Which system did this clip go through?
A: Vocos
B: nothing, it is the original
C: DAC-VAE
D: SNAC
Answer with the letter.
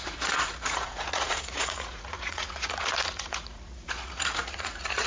A